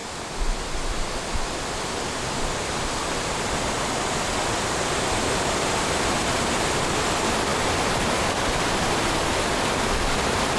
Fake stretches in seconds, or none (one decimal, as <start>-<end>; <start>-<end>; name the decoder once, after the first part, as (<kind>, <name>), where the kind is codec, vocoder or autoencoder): 0.0-4.1 (vocoder, BigVGAN v2); 6.2-6.9; 7.5-9.1